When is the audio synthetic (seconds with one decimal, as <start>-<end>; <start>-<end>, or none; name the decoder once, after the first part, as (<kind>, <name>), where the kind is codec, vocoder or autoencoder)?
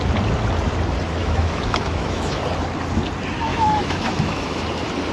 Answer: 1.2-2.4 (autoencoder, DAC-VAE); 3.5-4.6